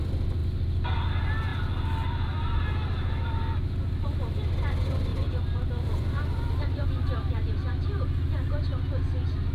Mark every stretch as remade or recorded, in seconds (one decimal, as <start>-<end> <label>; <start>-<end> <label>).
0.0-5.1 recorded; 5.1-7.3 remade; 7.3-9.5 recorded